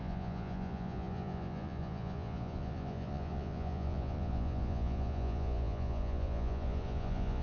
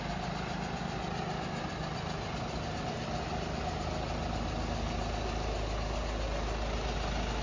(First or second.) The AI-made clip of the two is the first